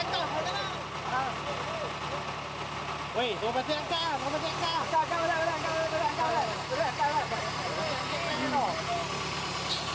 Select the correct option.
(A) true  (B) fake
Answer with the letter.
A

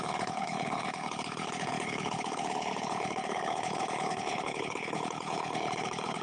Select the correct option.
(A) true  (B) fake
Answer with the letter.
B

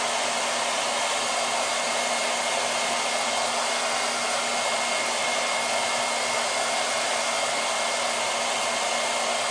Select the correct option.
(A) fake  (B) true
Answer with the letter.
B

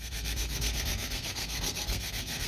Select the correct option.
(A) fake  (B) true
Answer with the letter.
A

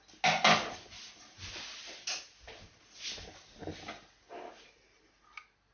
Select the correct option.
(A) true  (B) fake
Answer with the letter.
A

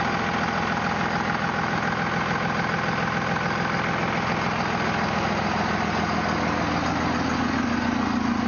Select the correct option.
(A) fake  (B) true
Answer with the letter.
B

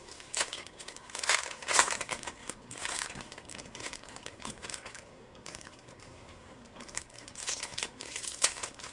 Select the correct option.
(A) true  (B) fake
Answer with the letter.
B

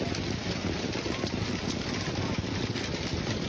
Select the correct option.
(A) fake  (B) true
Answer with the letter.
B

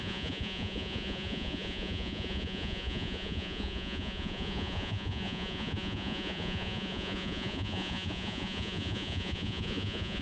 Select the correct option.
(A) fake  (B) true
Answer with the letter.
A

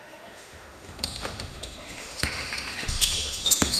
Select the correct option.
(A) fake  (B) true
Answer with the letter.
A